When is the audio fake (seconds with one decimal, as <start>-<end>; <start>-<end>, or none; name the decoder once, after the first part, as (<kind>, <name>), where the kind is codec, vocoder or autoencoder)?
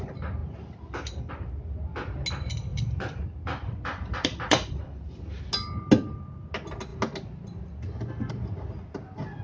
2.7-5.2 (vocoder, BigVGAN v2)